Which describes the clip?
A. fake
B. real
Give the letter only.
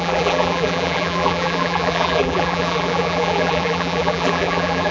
A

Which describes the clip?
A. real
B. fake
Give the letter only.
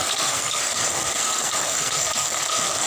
B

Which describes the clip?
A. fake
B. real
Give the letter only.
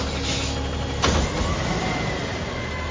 B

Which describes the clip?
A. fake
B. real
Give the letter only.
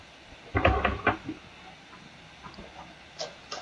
B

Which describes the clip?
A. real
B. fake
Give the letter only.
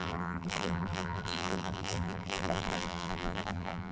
B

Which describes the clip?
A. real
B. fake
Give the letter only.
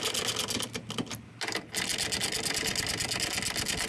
A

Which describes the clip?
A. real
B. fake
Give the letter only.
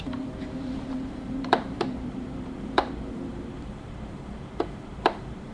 B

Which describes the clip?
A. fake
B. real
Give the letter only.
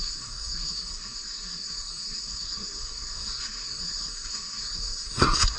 A